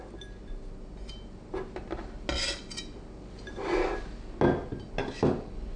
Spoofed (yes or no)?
no